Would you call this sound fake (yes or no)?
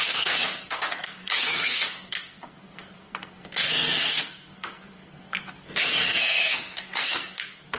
yes